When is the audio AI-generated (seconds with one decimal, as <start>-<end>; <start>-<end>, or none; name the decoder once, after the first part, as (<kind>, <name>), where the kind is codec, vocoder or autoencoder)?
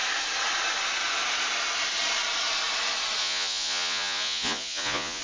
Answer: 3.2-5.2 (vocoder, Vocos)